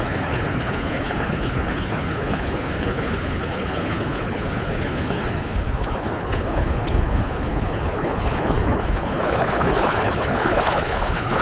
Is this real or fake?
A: fake